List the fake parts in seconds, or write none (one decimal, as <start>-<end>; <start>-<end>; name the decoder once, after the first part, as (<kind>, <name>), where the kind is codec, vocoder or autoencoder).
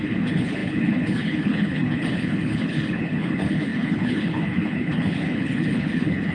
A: 0.0-6.3 (codec, HILCodec)